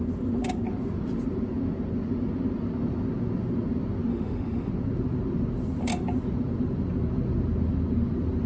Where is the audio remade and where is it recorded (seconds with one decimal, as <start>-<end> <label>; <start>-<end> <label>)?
0.0-4.1 recorded; 4.1-4.7 remade; 4.7-8.5 recorded